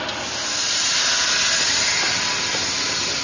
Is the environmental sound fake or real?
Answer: real